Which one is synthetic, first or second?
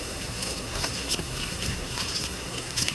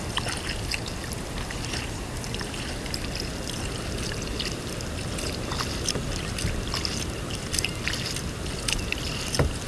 first